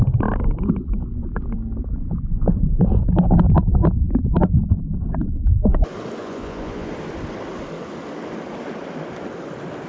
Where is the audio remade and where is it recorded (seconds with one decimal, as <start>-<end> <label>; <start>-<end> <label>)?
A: 0.0-6.2 recorded; 6.2-6.9 remade; 6.9-9.9 recorded